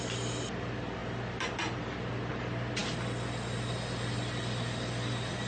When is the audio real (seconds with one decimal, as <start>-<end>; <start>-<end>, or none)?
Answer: 0.0-5.5